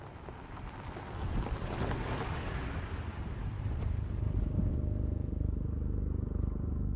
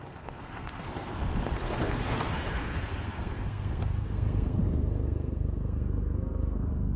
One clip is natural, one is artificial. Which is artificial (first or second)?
second